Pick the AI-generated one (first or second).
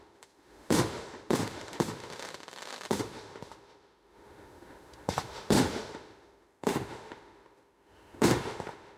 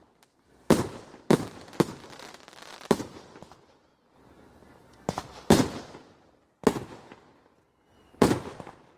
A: first